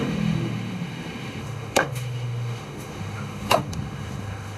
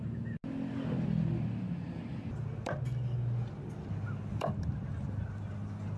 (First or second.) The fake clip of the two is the first